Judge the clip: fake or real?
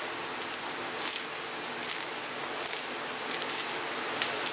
real